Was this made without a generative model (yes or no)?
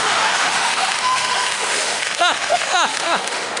no